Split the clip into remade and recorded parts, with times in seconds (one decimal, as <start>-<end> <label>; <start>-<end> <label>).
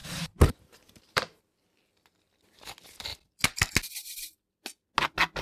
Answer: 0.0-1.4 remade; 1.4-5.4 recorded